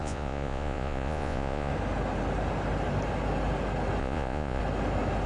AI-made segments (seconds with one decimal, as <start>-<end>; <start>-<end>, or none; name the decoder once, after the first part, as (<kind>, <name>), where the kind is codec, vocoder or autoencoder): 0.0-1.7 (vocoder, Vocos); 4.0-4.6